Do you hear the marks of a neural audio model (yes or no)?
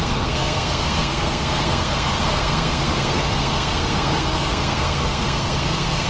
yes